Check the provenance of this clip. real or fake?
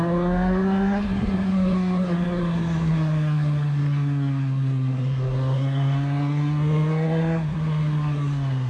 fake